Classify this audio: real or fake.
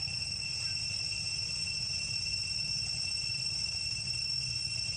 real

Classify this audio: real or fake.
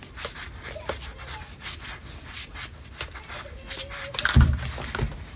real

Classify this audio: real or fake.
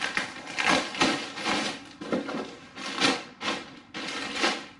real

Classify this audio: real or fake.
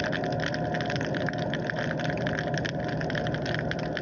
real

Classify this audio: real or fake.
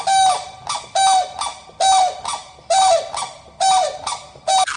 real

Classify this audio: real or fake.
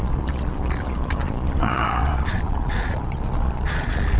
fake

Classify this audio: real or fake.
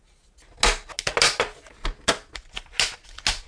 real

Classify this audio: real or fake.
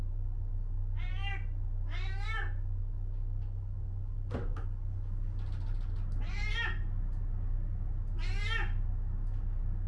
real